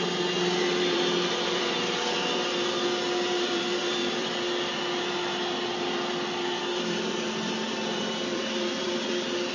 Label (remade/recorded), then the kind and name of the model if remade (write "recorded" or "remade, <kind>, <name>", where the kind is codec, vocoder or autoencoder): remade, vocoder, BigVGAN v2